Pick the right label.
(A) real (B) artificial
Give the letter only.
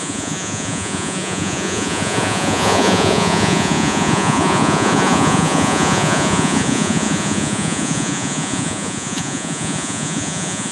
B